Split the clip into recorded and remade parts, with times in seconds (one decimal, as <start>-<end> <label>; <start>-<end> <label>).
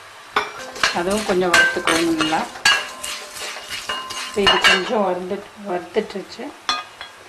0.0-7.3 recorded